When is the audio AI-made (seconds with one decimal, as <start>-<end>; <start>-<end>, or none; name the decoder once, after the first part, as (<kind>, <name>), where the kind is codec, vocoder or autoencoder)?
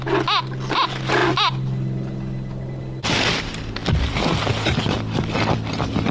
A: none